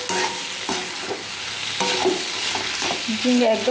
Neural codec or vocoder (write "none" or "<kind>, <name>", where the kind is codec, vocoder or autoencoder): none